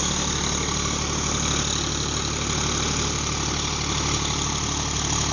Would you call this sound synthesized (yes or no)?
no